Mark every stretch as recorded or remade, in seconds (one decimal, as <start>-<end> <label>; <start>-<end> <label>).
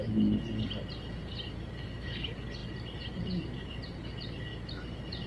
0.0-5.3 recorded